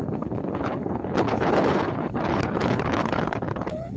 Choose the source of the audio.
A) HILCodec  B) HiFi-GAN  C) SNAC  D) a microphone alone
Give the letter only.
A